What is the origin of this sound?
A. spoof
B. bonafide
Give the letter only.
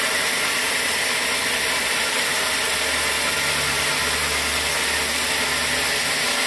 B